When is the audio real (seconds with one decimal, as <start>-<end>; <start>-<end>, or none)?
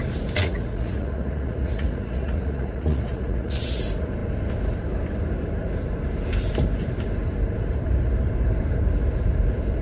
0.0-0.4; 3.8-9.8